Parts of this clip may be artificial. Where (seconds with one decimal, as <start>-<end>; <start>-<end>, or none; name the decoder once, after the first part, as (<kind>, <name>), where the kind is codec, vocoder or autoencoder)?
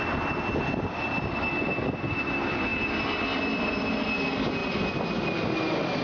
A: none